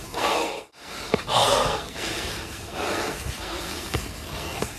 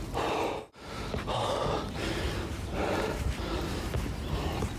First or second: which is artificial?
first